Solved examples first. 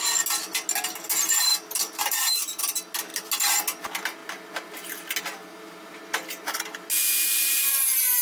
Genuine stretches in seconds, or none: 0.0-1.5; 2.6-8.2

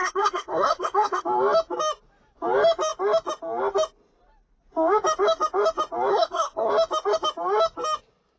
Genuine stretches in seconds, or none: 1.2-6.1; 6.7-8.4